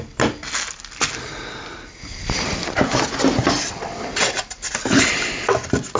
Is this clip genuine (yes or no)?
yes